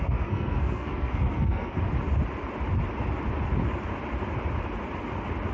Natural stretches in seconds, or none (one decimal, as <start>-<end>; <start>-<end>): 1.9-5.5